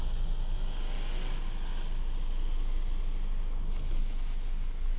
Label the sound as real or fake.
real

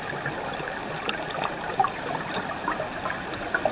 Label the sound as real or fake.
real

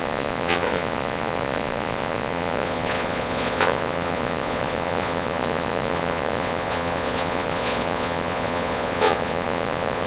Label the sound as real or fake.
fake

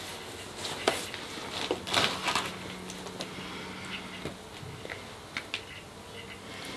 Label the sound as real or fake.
real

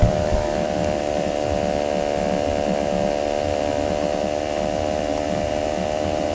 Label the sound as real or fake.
fake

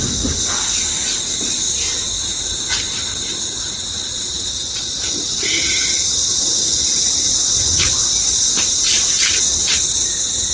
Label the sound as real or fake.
real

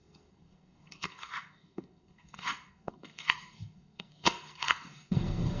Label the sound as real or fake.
fake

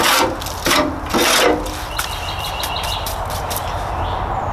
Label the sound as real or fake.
real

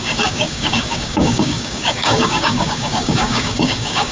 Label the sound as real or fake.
fake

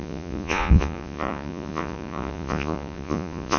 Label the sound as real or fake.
fake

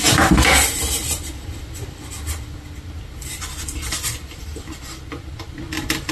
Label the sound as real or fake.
real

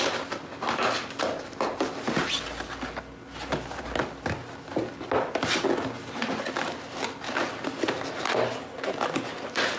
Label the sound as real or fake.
real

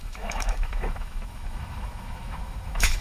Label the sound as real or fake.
fake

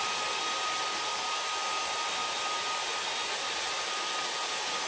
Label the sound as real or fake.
real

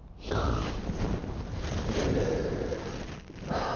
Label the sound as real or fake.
real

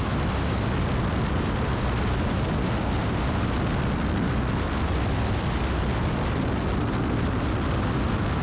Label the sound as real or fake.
fake